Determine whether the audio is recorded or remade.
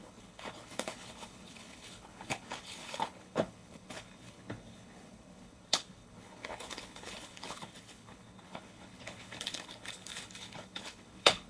remade